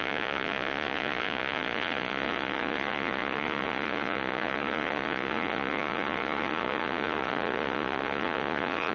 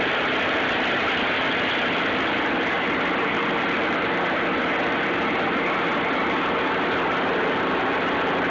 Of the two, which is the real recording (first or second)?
second